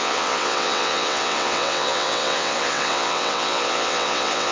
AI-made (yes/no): yes